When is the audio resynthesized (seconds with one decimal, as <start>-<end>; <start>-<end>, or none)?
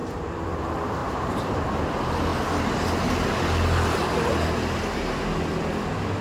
0.0-0.6; 1.0-1.8